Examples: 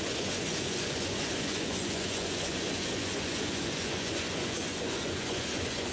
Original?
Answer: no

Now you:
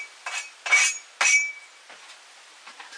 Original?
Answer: yes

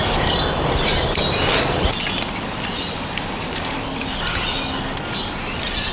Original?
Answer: yes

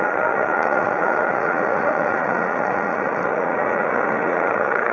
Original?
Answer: no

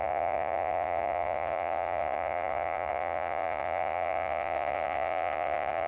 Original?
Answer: no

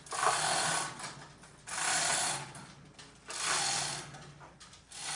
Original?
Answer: yes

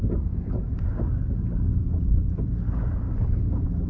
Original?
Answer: yes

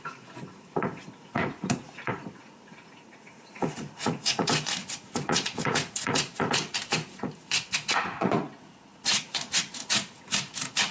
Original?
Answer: no